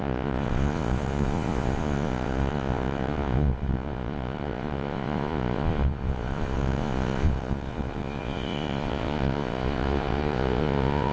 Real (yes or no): no